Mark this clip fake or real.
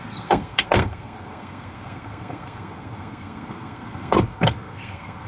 fake